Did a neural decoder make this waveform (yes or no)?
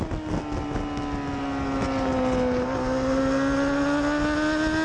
no